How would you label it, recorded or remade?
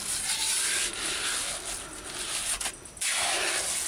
recorded